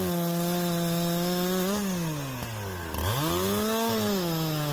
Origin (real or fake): real